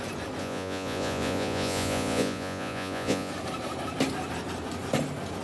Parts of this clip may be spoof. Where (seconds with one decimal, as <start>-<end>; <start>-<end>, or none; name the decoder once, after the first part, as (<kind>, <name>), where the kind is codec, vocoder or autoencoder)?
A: 0.4-3.3 (vocoder, Vocos)